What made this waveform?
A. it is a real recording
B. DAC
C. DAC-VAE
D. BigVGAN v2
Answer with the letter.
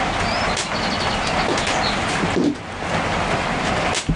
A